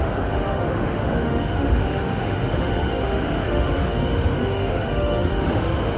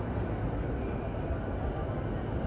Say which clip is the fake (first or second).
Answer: first